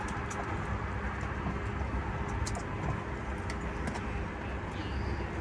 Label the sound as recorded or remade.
recorded